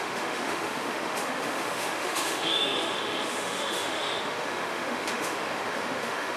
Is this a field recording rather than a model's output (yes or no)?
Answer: no